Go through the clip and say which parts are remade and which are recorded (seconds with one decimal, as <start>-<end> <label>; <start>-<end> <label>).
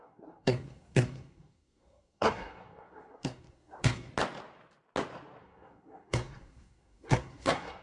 0.0-4.1 remade; 4.1-5.4 recorded; 5.4-7.8 remade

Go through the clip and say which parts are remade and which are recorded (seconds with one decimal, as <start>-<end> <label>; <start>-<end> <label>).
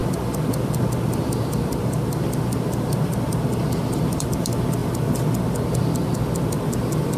0.0-7.2 recorded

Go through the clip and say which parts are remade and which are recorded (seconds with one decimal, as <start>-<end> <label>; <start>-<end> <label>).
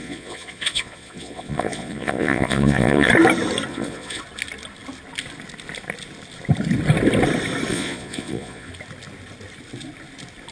0.0-3.1 remade; 3.1-3.7 recorded; 3.7-4.2 remade; 4.2-7.7 recorded; 7.7-8.7 remade; 8.7-10.5 recorded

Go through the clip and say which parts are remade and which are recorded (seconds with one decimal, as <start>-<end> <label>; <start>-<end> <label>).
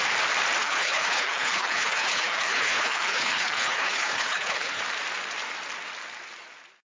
0.0-0.6 recorded; 0.6-4.8 remade; 4.8-7.0 recorded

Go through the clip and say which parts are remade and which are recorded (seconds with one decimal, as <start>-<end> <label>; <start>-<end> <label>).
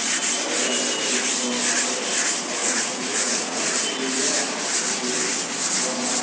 0.0-2.6 recorded; 2.6-3.8 remade; 3.8-6.2 recorded